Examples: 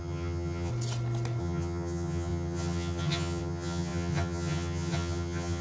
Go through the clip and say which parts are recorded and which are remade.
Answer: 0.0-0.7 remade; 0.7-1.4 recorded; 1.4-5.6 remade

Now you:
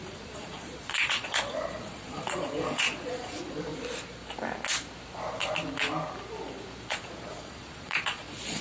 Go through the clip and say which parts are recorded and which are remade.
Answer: 0.0-3.7 remade; 3.7-6.9 recorded; 6.9-8.6 remade

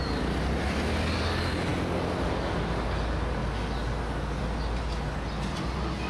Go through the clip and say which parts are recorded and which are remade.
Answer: 0.0-6.1 recorded